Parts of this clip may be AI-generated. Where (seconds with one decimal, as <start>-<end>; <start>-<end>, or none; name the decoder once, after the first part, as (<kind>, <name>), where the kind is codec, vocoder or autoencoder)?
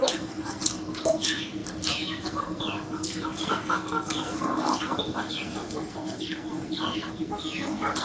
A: 0.0-8.0 (codec, SNAC)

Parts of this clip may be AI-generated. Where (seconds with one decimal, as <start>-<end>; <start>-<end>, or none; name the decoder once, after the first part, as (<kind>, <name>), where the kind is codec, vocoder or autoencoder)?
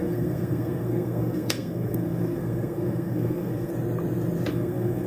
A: 0.0-3.7 (codec, SNAC); 4.5-5.1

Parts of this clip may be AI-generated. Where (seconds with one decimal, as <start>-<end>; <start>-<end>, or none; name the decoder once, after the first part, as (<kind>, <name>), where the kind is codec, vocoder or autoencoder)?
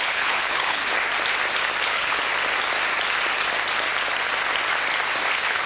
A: 0.0-0.8 (codec, HILCodec); 1.8-2.2; 5.3-5.7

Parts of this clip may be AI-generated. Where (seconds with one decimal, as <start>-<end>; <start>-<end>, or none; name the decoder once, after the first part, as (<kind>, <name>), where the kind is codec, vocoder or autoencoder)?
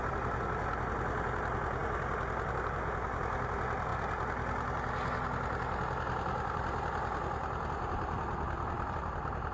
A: none